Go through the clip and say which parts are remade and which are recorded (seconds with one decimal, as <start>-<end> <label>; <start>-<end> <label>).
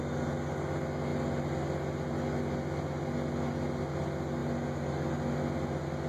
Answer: 0.0-6.1 recorded